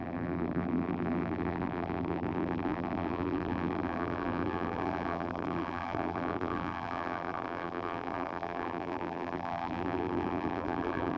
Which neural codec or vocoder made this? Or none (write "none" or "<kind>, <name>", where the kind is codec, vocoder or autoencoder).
vocoder, BigVGAN v2